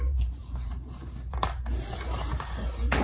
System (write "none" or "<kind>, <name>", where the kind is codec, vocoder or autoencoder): vocoder, BigVGAN v2